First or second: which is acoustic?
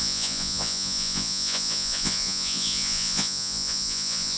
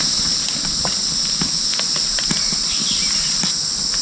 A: second